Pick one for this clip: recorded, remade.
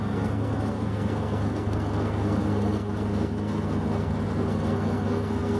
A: remade